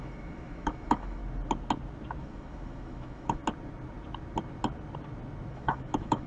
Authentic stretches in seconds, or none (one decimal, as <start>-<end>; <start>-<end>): 1.2-2.2; 3.4-5.5